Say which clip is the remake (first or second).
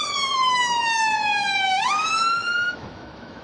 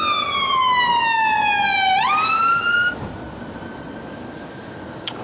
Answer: first